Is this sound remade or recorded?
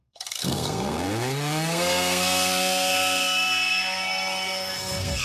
remade